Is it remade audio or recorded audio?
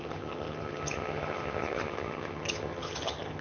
remade